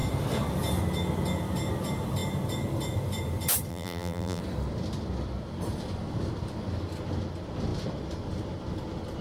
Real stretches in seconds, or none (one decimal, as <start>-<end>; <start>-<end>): 0.0-3.7; 4.4-9.2

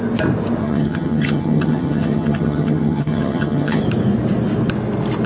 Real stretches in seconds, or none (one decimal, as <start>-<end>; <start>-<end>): 0.0-0.6; 3.8-5.3

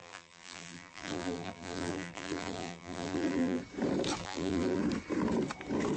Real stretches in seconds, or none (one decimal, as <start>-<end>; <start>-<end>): 3.6-4.2; 4.8-6.0

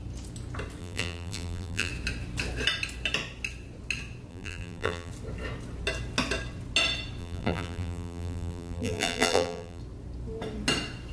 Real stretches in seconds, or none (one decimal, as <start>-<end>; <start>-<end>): 0.0-0.8; 1.9-4.3; 5.1-7.2; 9.8-11.1

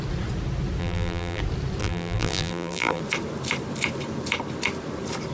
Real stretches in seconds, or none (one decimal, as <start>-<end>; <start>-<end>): 0.0-0.8; 1.4-1.8; 3.0-5.3

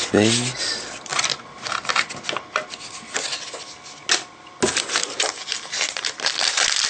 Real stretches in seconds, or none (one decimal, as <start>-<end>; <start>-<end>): 0.0-5.0; 6.3-6.9